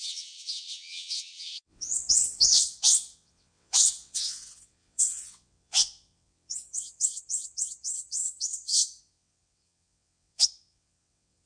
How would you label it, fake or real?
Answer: fake